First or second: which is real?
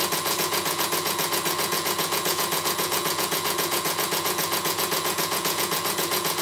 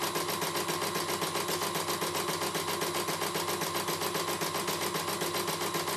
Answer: second